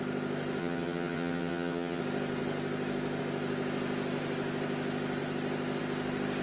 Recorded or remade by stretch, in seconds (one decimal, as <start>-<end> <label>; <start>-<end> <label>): 0.0-0.6 recorded; 0.6-2.0 remade; 2.0-6.4 recorded